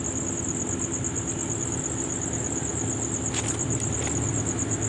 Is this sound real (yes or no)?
yes